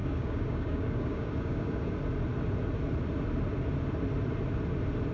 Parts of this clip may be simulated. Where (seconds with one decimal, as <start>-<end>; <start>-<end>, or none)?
0.0-1.9